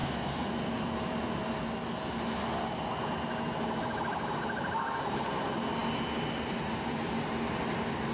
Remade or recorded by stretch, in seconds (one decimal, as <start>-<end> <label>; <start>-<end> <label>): 0.0-0.5 remade; 0.5-8.1 recorded